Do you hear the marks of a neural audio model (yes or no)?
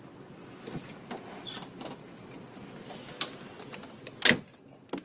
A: no